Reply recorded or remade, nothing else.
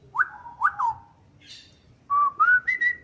recorded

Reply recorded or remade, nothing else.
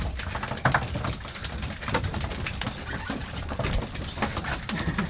recorded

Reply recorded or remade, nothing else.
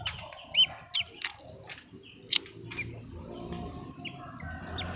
recorded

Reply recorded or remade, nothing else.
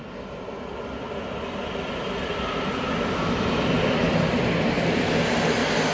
recorded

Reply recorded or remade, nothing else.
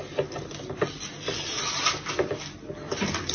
recorded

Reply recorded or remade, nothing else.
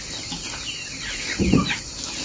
recorded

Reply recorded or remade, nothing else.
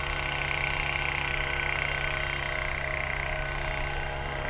recorded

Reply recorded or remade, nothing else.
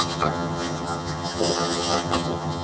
remade